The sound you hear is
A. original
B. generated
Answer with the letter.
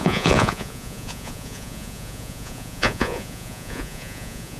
B